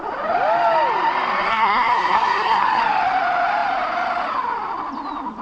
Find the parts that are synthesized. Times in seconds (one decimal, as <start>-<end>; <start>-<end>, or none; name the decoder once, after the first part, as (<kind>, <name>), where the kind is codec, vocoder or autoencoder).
1.5-2.8 (codec, SNAC)